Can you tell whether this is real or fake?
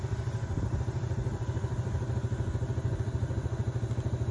real